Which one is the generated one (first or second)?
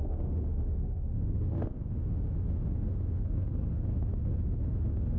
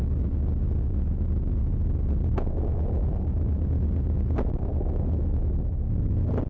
first